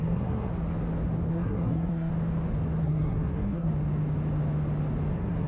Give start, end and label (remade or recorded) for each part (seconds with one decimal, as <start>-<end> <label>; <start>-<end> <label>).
0.0-0.5 remade; 0.5-1.3 recorded; 1.3-2.1 remade; 2.1-2.8 recorded; 2.8-3.7 remade; 3.7-5.1 recorded; 5.1-5.5 remade